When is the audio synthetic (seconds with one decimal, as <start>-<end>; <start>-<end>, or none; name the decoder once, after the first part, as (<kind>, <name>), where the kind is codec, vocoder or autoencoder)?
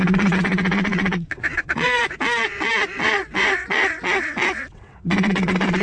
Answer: 0.0-5.8 (vocoder, WaveNeXt)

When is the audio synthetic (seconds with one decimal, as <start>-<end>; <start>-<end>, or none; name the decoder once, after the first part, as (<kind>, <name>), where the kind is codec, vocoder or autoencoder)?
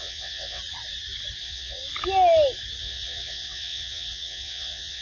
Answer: 0.0-0.6 (vocoder, WaveNeXt); 1.4-1.8; 2.8-5.0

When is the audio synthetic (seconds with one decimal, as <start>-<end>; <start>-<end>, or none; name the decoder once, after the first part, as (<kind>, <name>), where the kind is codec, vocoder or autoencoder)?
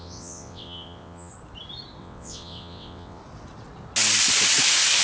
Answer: 0.0-1.3 (vocoder, WaveNeXt); 2.0-3.2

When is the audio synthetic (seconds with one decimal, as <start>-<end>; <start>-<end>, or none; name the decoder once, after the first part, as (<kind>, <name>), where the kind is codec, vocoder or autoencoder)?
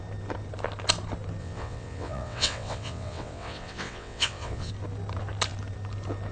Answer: 1.4-4.7 (vocoder, WaveNeXt)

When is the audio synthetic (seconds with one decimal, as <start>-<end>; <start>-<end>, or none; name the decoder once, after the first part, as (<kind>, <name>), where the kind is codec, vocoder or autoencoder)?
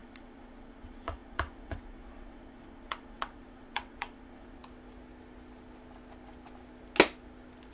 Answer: 0.0-4.6 (vocoder, WaveNeXt)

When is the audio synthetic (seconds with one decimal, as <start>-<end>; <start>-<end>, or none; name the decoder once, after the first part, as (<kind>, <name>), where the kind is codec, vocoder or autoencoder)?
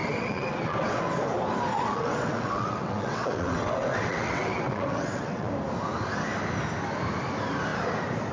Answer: 0.0-1.0 (vocoder, WaveNeXt); 1.7-5.5